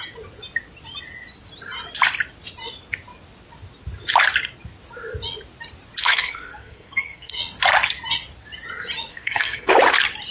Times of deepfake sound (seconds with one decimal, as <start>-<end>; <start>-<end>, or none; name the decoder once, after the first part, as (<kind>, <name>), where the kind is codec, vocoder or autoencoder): 6.0-7.4 (codec, SNAC); 9.1-9.7